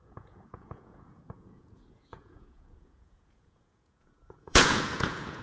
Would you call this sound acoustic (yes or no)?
no